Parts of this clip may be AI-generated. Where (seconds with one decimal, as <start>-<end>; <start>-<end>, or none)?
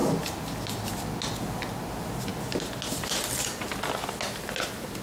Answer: none